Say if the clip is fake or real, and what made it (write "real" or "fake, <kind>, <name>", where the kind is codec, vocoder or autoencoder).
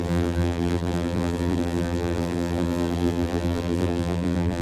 fake, vocoder, BigVGAN v2